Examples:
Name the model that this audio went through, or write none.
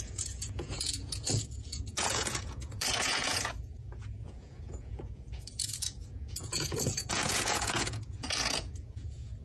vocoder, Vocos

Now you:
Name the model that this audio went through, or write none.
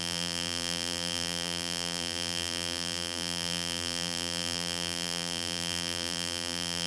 vocoder, BigVGAN v2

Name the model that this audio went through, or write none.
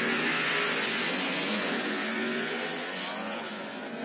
vocoder, Vocos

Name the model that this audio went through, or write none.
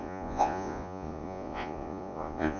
vocoder, Vocos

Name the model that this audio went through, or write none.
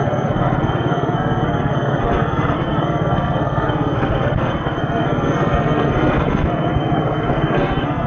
codec, SNAC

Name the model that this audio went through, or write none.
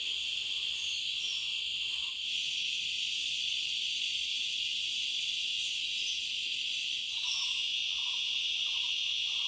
none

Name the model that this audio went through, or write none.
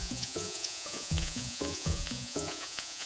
vocoder, Vocos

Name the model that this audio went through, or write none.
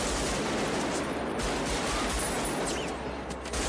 none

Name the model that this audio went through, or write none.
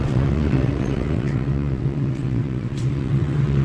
vocoder, WaveNeXt